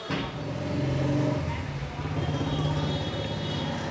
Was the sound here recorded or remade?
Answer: recorded